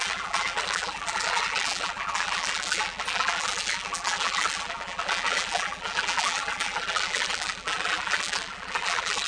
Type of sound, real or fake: fake